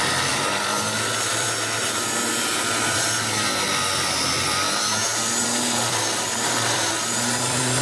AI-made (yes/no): yes